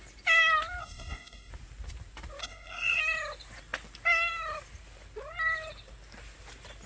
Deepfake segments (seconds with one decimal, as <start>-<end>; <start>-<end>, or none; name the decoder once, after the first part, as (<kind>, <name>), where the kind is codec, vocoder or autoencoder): 0.8-1.5 (codec, SNAC); 2.4-3.0